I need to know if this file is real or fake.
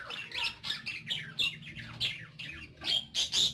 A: real